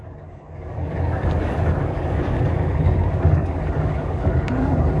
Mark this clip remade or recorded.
remade